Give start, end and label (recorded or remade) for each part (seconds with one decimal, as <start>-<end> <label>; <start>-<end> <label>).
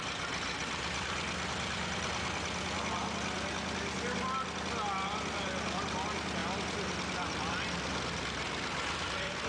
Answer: 0.0-9.5 recorded